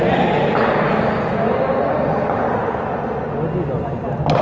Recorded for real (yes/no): yes